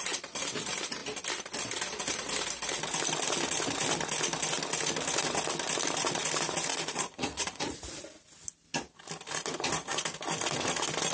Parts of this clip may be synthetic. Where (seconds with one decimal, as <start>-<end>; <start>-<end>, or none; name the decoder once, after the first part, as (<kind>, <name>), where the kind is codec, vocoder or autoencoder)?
6.7-7.8 (vocoder, Vocos)